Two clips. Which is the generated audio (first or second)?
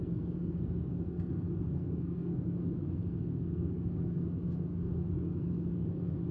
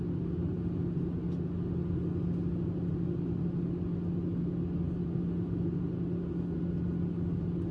first